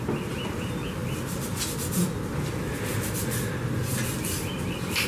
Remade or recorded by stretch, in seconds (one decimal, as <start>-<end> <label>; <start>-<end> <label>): 0.0-5.1 recorded